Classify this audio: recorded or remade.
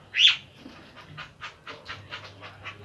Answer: recorded